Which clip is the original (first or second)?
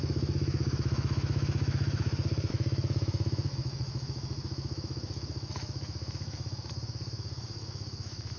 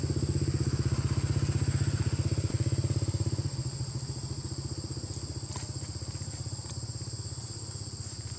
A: second